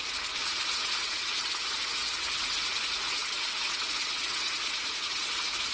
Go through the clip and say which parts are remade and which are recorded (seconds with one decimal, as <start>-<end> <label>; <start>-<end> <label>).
0.0-5.7 remade